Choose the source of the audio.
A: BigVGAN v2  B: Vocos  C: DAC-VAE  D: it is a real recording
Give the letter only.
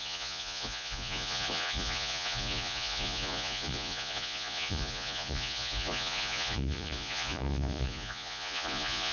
B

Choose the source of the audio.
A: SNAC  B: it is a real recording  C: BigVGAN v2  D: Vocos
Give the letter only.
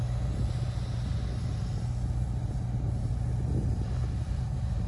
B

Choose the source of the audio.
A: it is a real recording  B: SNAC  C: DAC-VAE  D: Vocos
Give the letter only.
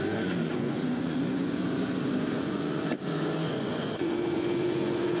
D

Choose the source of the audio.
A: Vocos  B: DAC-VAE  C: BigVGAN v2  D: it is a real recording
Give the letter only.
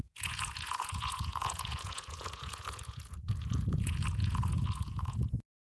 A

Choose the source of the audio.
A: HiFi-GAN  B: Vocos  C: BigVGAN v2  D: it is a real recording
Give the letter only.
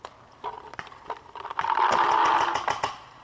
D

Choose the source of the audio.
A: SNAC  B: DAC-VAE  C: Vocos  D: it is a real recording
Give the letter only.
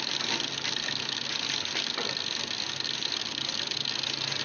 D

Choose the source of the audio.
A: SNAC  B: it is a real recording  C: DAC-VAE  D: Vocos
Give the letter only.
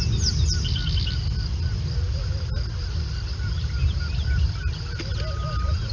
B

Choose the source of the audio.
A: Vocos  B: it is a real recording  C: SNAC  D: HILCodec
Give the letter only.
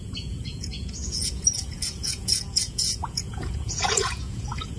A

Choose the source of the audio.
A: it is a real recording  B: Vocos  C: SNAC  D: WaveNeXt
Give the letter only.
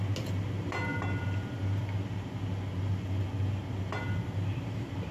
A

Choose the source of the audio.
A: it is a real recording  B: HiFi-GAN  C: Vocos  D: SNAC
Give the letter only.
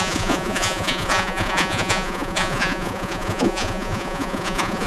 C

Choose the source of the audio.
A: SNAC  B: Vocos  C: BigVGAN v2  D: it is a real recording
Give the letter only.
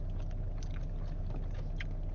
D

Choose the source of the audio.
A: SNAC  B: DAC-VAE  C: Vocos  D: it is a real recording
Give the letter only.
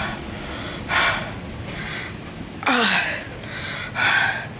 D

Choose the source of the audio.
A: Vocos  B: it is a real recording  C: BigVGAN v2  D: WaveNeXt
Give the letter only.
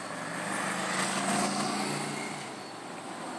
B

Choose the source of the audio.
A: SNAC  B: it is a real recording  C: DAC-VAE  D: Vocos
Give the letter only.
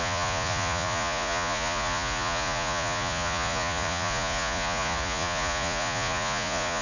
D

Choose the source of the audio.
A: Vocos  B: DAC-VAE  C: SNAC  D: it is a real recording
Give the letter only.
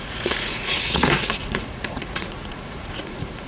A